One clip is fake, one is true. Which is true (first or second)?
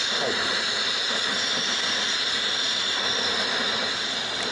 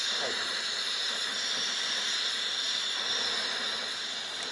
second